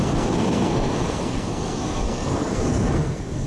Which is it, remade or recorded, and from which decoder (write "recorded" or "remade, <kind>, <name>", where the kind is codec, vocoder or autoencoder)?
remade, codec, SNAC